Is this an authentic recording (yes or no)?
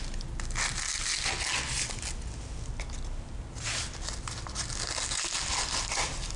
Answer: yes